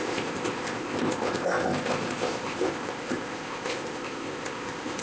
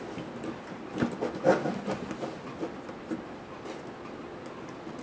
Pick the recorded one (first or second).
second